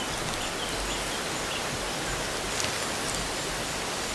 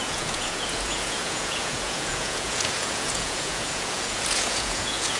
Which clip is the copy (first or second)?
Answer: second